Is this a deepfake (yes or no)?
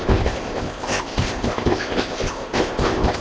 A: yes